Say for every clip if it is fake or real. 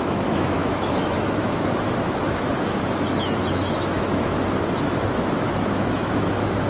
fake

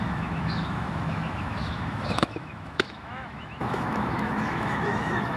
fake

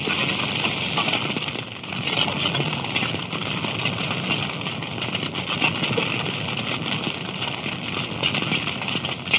real